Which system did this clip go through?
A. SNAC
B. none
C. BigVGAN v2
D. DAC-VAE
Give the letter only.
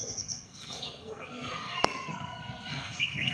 A